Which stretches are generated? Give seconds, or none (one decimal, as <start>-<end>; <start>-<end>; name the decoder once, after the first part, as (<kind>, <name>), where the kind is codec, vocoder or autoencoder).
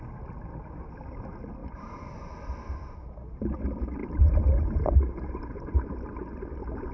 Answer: 1.6-2.1 (vocoder, BigVGAN v2); 4.0-5.8